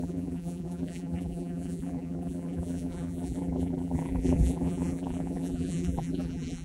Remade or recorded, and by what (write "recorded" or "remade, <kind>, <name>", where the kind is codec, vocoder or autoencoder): remade, vocoder, BigVGAN v2